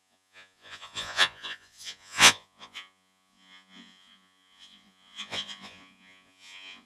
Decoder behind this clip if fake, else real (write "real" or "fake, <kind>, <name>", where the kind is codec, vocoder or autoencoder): fake, vocoder, Vocos